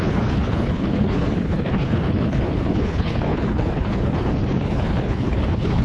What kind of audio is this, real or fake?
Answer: fake